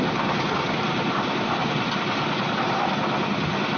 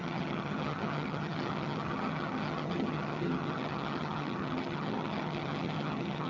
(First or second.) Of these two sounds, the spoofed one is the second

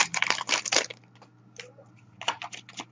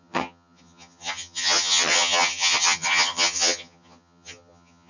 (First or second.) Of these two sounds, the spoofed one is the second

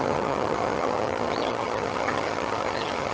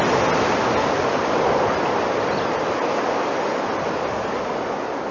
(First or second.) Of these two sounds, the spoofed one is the first